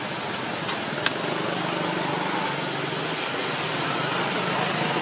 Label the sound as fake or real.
real